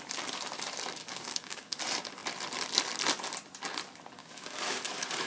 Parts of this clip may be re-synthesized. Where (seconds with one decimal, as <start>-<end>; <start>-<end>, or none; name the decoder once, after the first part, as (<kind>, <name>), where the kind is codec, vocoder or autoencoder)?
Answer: 1.0-1.8 (codec, DAC); 4.2-5.3